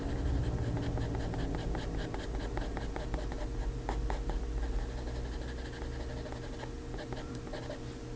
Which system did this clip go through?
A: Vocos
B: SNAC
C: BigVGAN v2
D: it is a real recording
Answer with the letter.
D